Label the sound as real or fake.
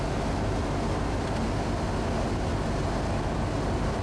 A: real